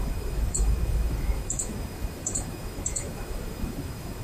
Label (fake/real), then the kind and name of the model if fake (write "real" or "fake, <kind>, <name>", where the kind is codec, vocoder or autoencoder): fake, autoencoder, DAC-VAE